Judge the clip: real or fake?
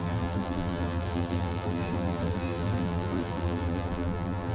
fake